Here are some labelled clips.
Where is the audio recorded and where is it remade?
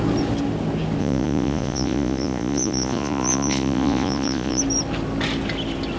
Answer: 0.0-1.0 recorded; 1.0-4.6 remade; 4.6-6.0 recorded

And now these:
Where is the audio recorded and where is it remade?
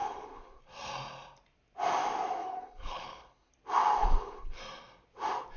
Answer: 0.0-0.6 remade; 0.6-2.4 recorded; 2.4-3.5 remade; 3.5-4.0 recorded; 4.0-4.6 remade; 4.6-5.6 recorded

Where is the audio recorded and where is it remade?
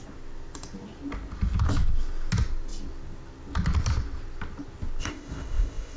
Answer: 0.0-5.0 recorded; 5.0-6.0 remade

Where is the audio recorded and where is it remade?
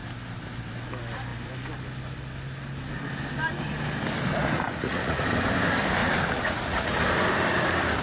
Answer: 0.0-4.5 recorded; 4.5-5.2 remade; 5.2-6.0 recorded; 6.0-6.9 remade; 6.9-8.0 recorded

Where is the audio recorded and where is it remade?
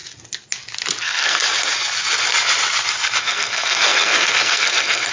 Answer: 0.0-1.0 recorded; 1.0-1.4 remade; 1.4-3.2 recorded; 3.2-5.1 remade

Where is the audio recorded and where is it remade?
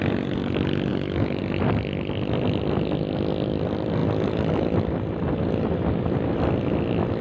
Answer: 0.0-0.9 recorded; 0.9-1.4 remade; 1.4-7.2 recorded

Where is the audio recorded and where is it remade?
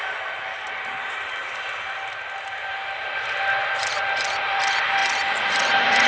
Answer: 0.0-6.1 recorded